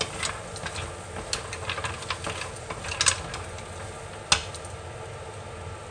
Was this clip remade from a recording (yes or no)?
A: no